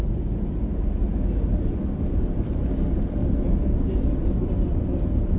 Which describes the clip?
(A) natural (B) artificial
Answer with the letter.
A